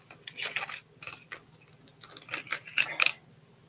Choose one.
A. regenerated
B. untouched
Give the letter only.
B